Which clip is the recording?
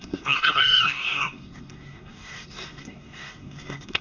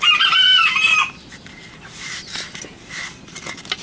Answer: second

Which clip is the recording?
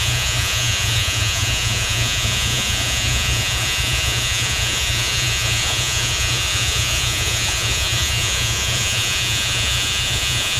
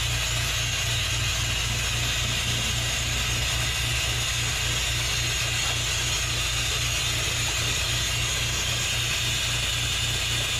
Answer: second